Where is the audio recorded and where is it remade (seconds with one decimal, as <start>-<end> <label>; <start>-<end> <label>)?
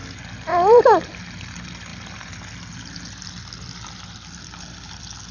0.0-0.5 recorded; 0.5-1.1 remade; 1.1-5.3 recorded